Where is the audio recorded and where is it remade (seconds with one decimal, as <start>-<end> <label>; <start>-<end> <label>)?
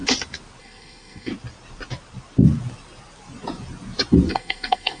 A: 0.0-0.6 recorded; 0.6-1.3 remade; 1.3-4.3 recorded; 4.3-5.0 remade